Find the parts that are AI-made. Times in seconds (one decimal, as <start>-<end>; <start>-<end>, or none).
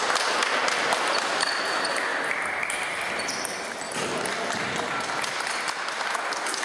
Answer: none